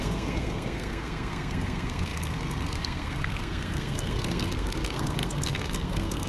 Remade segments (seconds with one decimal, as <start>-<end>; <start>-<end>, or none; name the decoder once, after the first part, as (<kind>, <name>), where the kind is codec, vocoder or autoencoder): 0.0-6.3 (codec, SNAC)